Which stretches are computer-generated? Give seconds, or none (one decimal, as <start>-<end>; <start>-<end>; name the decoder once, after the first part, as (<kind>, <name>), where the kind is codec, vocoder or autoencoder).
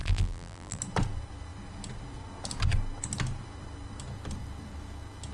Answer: 0.0-0.8 (vocoder, BigVGAN v2)